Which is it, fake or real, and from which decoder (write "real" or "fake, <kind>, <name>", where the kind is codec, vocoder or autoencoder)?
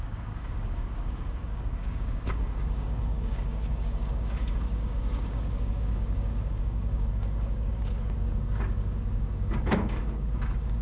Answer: fake, codec, DAC